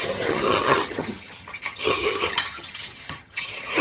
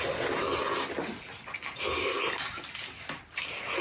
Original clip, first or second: second